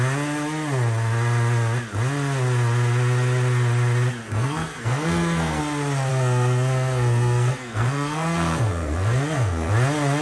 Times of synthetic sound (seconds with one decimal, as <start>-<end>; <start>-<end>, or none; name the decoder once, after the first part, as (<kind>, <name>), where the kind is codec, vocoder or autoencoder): 4.2-5.6 (codec, SNAC); 6.1-9.7

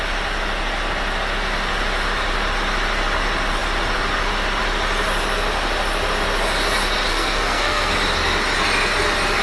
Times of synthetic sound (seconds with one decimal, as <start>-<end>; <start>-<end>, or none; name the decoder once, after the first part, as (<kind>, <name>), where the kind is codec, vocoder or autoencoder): 7.1-7.9 (codec, SNAC)

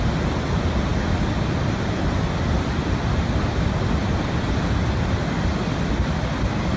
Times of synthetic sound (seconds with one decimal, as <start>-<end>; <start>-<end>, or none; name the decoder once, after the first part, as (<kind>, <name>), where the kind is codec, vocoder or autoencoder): none

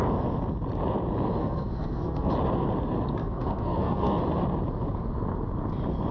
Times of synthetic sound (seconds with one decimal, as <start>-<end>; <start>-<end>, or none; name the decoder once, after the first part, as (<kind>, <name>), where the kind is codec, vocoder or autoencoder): 1.4-2.3 (codec, SNAC); 3.2-4.2

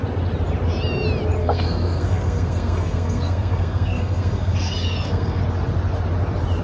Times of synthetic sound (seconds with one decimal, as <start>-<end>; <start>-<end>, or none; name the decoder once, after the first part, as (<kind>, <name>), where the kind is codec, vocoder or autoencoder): 1.4-5.4 (codec, SNAC)

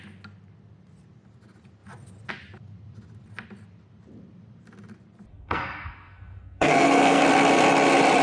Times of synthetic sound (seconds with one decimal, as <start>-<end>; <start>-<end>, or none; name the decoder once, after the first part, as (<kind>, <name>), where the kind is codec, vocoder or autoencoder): 5.3-7.2 (codec, SNAC)